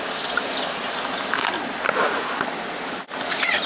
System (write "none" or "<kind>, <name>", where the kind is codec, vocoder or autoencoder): none